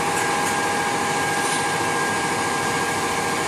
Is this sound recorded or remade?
recorded